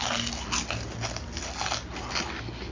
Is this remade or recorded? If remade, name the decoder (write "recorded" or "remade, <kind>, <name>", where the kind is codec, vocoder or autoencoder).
recorded